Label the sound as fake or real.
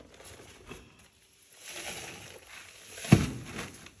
real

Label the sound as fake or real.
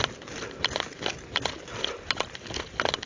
real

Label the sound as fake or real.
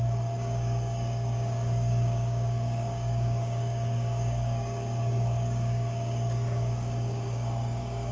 fake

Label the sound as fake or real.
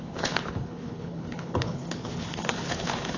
fake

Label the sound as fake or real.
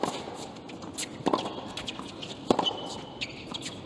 real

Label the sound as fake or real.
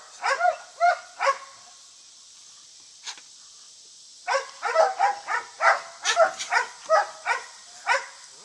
real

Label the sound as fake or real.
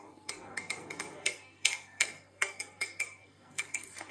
fake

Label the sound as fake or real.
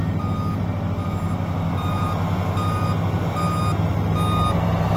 real